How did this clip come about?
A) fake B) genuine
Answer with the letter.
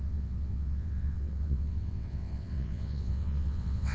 A